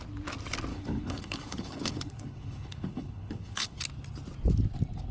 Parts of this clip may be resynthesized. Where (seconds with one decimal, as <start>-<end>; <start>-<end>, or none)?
0.7-3.8

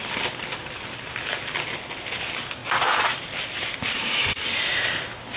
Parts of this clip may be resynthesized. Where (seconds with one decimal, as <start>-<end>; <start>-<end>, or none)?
0.0-1.1; 2.6-4.7

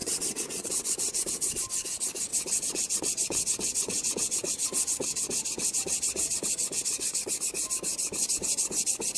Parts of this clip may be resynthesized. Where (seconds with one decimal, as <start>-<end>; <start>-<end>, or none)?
0.0-1.6; 2.3-7.3